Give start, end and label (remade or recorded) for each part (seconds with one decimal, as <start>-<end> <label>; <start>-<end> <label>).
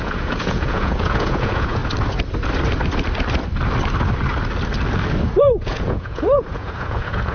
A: 0.0-1.8 remade; 1.8-5.4 recorded; 5.4-7.3 remade